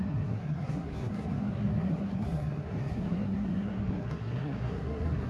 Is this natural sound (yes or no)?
no